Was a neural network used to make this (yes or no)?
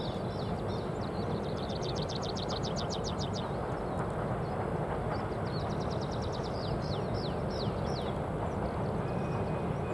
no